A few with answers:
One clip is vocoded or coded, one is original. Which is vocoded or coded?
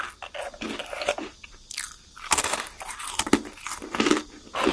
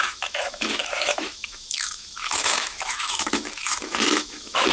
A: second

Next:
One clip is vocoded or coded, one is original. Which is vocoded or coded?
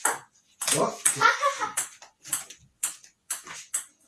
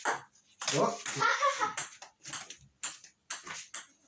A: first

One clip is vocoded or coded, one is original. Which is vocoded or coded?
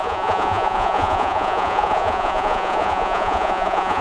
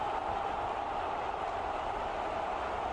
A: first